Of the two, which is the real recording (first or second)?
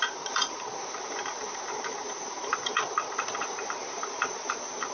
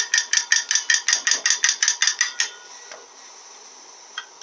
second